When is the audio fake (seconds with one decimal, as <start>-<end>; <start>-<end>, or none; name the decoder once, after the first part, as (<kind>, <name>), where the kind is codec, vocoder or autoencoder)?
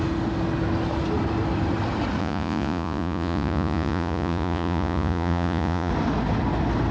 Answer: 2.2-5.9 (vocoder, Vocos)